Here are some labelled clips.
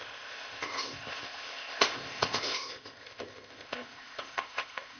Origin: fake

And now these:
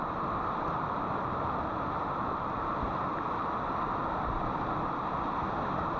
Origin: real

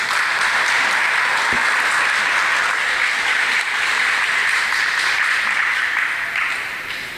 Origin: real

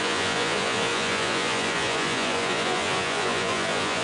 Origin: fake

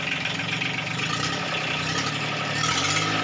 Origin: real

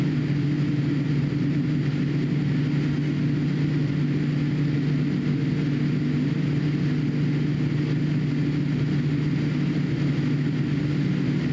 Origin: real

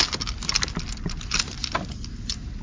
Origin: real